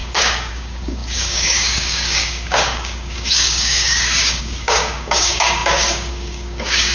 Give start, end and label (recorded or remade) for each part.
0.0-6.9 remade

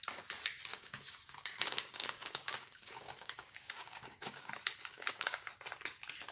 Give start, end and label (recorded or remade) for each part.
0.0-0.7 recorded; 0.7-4.5 remade; 4.5-4.9 recorded; 4.9-5.5 remade; 5.5-6.3 recorded

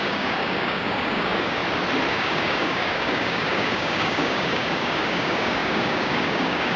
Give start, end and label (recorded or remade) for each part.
0.0-1.6 remade; 1.6-2.1 recorded; 2.1-6.8 remade

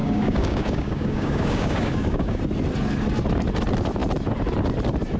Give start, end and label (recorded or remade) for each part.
0.0-2.4 remade; 2.4-5.2 recorded

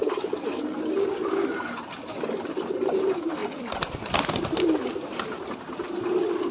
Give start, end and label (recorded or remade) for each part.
0.0-0.6 remade; 0.6-6.5 recorded

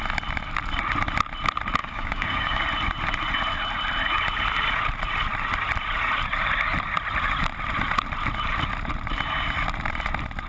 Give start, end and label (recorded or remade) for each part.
0.0-1.8 recorded; 1.8-2.6 remade; 2.6-10.5 recorded

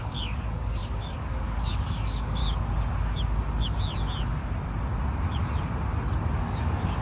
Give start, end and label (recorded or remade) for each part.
0.0-2.4 remade; 2.4-6.4 recorded; 6.4-7.0 remade

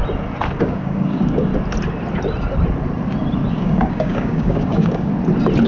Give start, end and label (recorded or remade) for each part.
0.0-0.6 recorded; 0.6-1.5 remade; 1.5-3.5 recorded; 3.5-5.1 remade; 5.1-5.7 recorded